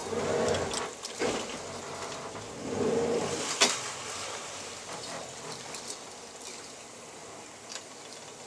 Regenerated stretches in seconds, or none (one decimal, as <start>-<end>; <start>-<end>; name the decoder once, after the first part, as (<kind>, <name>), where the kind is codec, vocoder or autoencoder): none